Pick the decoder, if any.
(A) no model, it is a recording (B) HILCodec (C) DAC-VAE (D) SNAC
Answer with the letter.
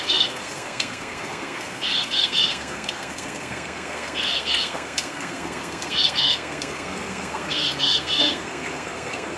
D